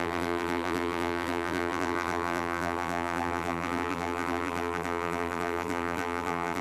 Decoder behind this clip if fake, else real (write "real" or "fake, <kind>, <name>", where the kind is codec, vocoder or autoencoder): fake, vocoder, BigVGAN v2